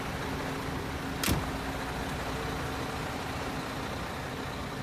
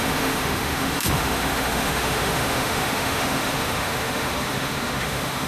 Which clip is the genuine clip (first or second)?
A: first